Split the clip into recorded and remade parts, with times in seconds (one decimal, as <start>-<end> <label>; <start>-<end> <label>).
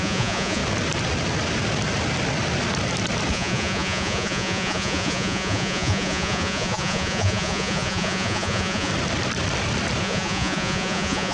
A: 0.0-0.6 remade; 0.6-3.3 recorded; 3.3-8.9 remade; 8.9-10.0 recorded; 10.0-11.3 remade